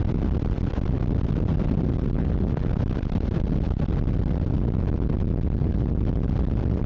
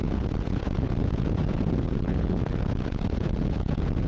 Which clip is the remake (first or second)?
second